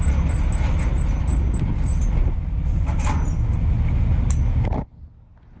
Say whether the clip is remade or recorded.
recorded